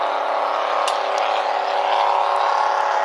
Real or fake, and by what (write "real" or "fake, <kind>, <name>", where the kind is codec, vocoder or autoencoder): real